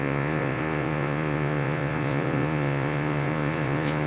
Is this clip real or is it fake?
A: fake